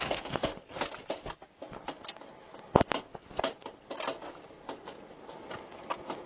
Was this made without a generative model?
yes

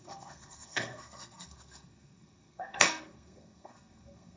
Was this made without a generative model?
no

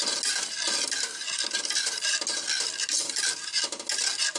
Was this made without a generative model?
yes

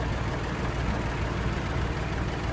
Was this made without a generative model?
yes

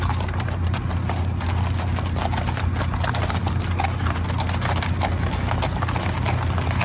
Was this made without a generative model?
yes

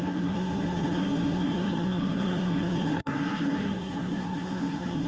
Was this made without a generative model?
no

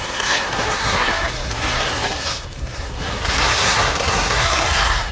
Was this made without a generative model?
no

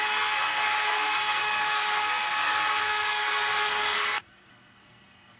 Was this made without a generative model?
no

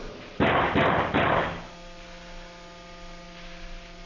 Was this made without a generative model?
yes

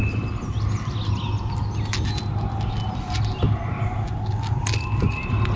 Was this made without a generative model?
yes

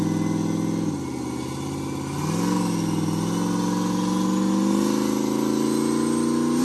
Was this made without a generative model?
yes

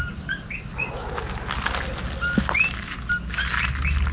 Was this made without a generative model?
yes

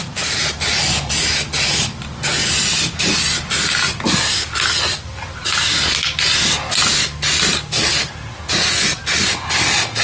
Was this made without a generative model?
yes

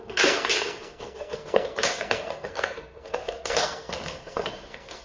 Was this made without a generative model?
no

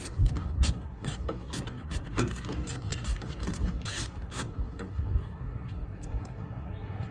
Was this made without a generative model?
no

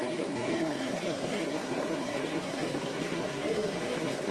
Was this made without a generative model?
no